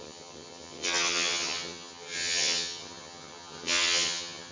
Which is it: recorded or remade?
remade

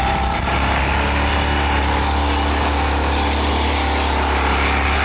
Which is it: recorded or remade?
recorded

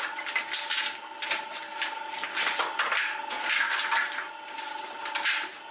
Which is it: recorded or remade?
recorded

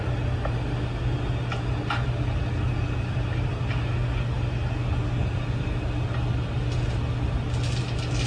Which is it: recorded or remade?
recorded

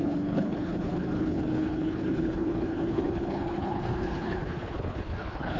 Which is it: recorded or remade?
remade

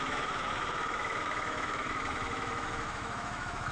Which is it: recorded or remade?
remade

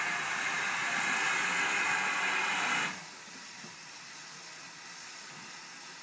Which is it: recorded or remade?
recorded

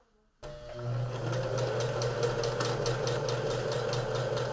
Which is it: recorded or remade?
recorded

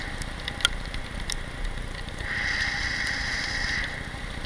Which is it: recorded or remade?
recorded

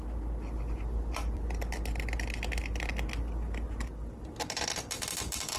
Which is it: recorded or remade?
recorded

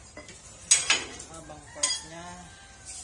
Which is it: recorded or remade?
recorded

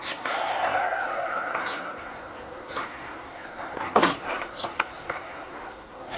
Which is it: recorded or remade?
remade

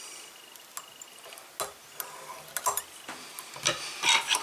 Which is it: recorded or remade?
recorded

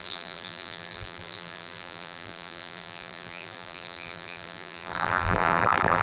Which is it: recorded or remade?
remade